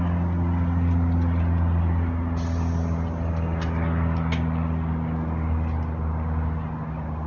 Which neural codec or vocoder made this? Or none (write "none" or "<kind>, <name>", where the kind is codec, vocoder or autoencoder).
none